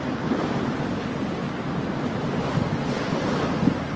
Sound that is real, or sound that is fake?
real